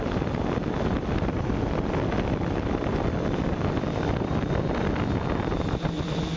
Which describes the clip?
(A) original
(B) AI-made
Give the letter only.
A